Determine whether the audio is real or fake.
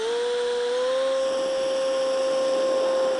real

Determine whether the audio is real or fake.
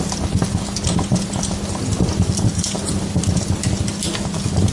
real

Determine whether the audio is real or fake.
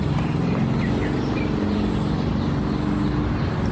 real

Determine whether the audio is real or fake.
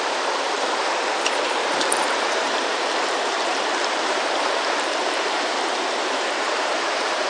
fake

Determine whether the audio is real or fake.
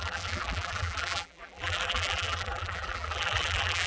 fake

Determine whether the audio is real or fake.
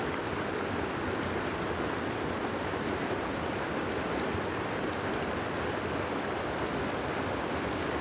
real